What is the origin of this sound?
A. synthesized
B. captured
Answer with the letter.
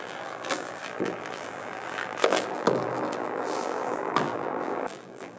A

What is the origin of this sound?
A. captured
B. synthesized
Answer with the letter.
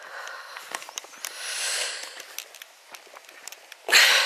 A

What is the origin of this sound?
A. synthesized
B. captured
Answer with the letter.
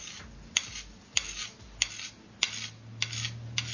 B